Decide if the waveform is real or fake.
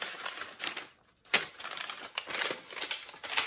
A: real